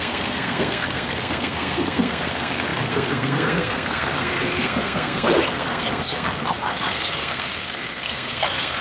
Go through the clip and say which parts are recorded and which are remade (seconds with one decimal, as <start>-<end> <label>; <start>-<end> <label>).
0.0-8.8 remade